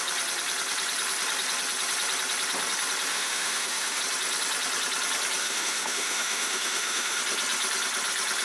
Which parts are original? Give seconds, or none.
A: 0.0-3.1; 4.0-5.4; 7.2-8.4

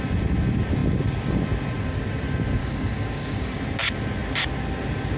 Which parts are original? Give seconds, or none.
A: 0.0-2.6; 3.6-5.2

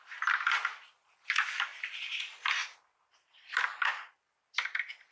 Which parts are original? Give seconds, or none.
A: 0.0-5.1

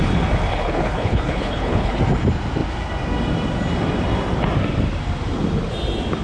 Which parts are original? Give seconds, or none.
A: 0.0-0.5; 2.0-6.2